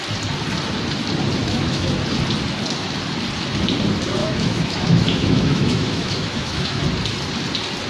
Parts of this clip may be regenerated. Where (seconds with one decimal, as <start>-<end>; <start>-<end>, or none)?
1.4-1.9; 4.2-6.8